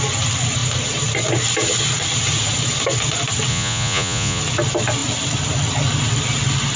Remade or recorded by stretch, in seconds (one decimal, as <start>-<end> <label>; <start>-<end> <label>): 0.0-3.5 recorded; 3.5-4.4 remade; 4.4-6.8 recorded